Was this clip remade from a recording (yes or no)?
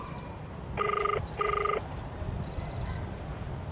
no